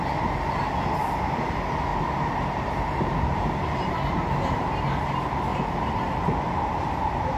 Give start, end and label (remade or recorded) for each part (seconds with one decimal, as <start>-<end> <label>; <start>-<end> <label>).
0.0-1.9 recorded; 1.9-4.8 remade; 4.8-5.5 recorded; 5.5-7.4 remade